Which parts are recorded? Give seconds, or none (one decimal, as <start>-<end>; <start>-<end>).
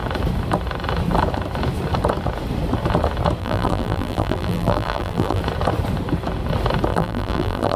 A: 0.0-3.4; 5.4-6.9